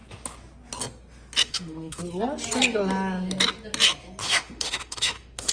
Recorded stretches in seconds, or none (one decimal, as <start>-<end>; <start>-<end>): 0.0-1.4; 2.0-4.2